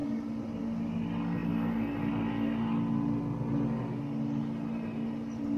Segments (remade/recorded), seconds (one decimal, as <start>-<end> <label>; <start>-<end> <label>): 0.0-5.6 recorded